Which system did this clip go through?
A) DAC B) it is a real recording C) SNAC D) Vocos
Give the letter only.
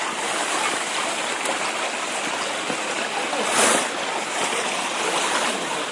B